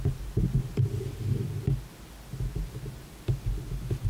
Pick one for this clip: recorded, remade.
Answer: recorded